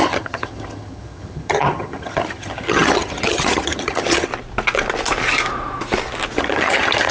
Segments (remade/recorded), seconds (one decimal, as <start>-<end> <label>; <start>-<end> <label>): 0.0-4.3 remade; 4.3-6.4 recorded; 6.4-7.1 remade